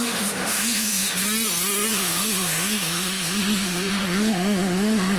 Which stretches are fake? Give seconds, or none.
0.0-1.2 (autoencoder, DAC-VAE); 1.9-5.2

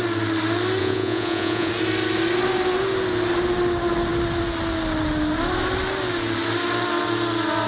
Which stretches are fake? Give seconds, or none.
0.8-1.7 (vocoder, Vocos)

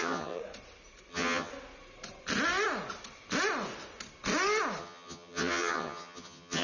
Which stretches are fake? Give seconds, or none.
0.0-0.4 (vocoder, HiFi-GAN); 1.1-1.5; 4.8-6.6

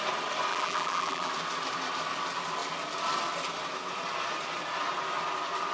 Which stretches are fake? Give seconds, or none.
0.5-1.3 (vocoder, BigVGAN v2)

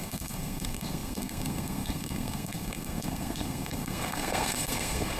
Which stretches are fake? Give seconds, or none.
0.0-5.2 (codec, SNAC)

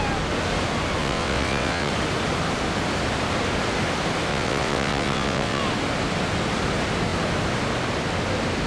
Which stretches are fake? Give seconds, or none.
1.0-1.9 (vocoder, WaveNeXt); 4.3-5.6

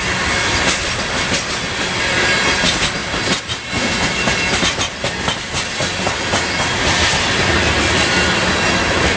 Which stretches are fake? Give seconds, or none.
3.0-5.1 (vocoder, BigVGAN v2)

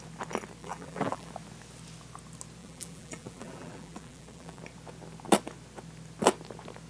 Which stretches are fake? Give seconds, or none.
0.6-1.3 (vocoder, BigVGAN v2); 2.6-4.6